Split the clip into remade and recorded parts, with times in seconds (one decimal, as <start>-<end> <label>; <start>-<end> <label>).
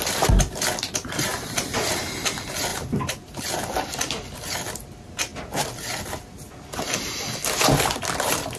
0.0-1.3 recorded; 1.3-2.0 remade; 2.0-2.7 recorded; 2.7-3.4 remade; 3.4-8.6 recorded